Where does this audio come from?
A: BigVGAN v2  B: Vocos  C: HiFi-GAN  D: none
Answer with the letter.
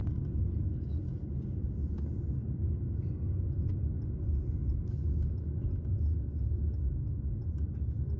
D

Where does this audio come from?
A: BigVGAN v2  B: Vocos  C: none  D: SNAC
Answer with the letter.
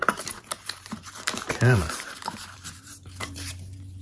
A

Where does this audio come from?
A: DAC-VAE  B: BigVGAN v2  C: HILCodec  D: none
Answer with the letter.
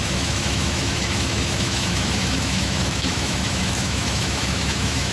A